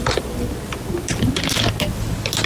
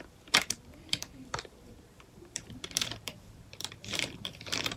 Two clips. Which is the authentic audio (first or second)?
first